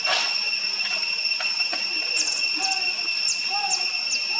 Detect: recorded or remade recorded